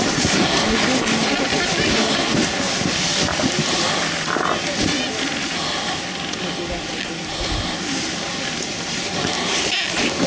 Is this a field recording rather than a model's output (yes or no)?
yes